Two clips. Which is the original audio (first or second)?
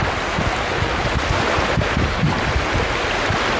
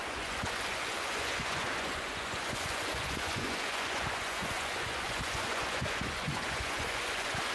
first